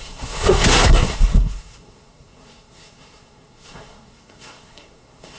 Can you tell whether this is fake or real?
fake